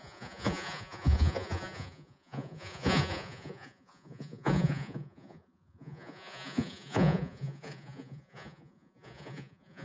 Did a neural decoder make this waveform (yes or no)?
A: yes